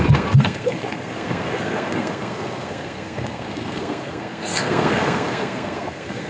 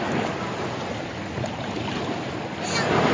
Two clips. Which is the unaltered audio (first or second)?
second